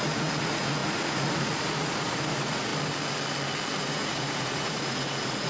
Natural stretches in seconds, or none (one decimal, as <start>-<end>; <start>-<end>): 2.7-3.8